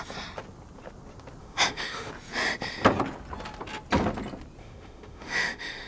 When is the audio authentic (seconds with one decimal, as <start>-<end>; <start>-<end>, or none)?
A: 0.0-1.4; 2.1-4.6